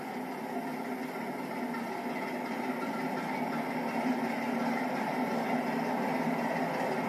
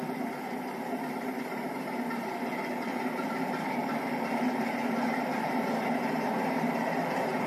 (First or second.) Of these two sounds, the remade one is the second